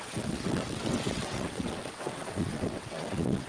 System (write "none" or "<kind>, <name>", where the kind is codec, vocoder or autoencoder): vocoder, WaveNeXt